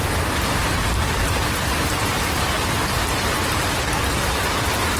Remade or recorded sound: recorded